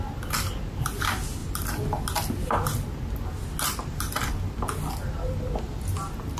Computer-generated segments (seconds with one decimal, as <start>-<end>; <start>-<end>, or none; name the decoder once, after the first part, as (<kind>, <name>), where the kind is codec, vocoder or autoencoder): none